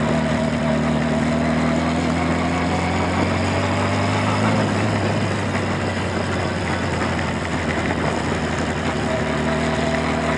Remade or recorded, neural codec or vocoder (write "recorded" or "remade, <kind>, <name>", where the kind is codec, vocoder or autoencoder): recorded